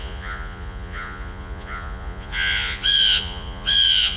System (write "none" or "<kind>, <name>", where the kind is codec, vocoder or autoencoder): vocoder, Vocos